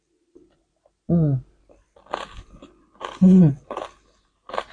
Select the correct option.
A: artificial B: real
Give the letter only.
B